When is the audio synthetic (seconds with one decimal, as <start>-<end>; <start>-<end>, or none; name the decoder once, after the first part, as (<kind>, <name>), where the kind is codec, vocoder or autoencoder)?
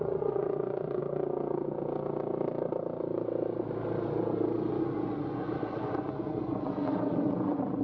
0.0-1.0 (vocoder, Vocos); 4.8-7.8